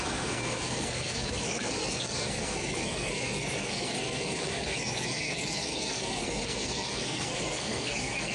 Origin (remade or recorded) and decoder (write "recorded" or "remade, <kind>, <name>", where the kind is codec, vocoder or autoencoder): remade, codec, SNAC